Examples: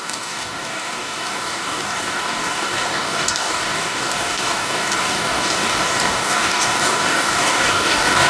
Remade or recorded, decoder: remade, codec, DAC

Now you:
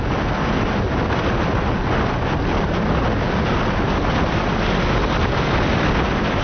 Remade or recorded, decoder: recorded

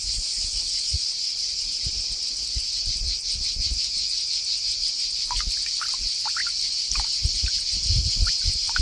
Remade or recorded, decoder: recorded